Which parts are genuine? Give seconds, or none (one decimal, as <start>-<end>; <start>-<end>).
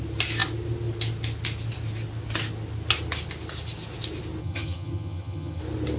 0.0-4.4; 5.6-6.0